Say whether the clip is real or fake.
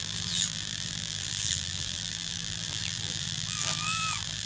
fake